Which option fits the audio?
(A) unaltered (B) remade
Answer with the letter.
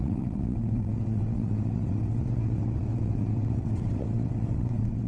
B